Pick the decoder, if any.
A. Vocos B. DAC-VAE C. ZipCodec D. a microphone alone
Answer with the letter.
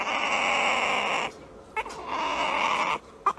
D